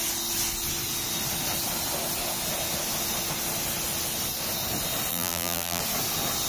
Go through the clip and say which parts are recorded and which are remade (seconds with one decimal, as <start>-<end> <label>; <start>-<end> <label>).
0.0-5.1 recorded; 5.1-5.8 remade; 5.8-6.5 recorded